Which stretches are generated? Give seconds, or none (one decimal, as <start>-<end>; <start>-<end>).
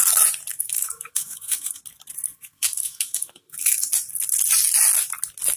0.5-1.8; 2.3-3.9